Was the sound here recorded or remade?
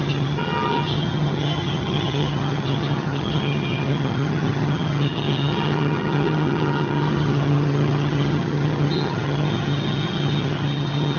remade